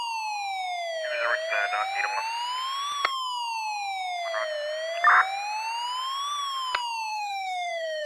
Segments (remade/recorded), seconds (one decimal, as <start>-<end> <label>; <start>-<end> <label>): 0.0-7.1 recorded; 7.1-8.1 remade